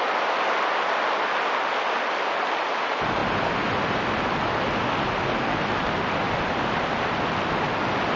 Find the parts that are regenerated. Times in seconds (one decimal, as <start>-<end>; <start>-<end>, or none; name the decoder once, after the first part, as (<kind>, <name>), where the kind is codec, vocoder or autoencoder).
none